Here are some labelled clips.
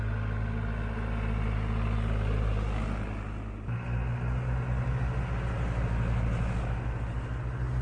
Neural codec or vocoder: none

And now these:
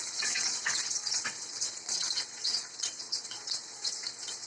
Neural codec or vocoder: vocoder, WaveNeXt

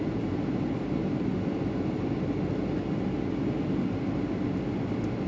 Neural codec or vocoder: none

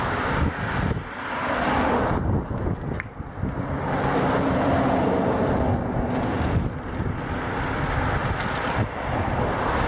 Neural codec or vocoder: none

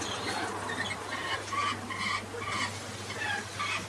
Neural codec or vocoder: none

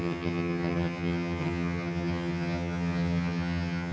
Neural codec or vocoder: vocoder, HiFi-GAN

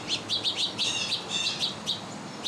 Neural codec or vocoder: none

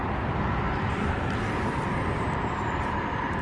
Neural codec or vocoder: none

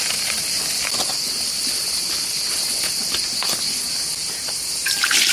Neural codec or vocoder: none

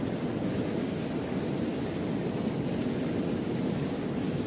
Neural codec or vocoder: none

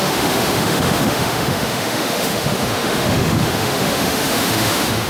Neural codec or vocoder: autoencoder, DAC-VAE